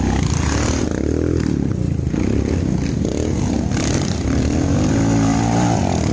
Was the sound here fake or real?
real